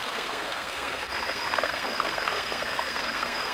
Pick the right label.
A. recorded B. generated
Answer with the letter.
B